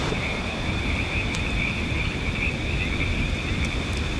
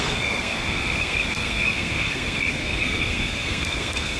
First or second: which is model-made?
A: second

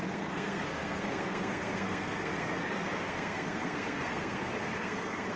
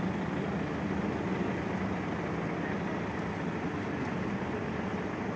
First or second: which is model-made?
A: first